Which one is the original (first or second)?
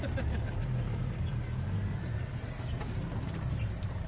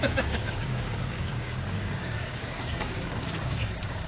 first